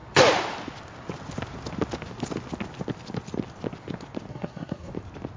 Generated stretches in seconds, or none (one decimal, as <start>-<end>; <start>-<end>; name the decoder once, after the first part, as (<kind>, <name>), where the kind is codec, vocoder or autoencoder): 4.3-4.9 (codec, SNAC)